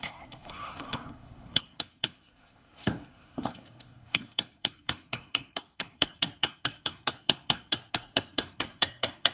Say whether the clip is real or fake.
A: fake